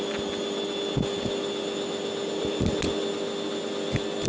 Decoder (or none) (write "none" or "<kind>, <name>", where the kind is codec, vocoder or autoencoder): none